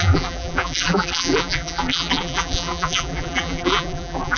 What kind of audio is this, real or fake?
fake